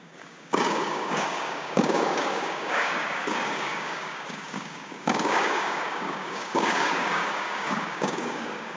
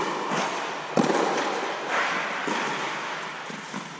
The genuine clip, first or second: second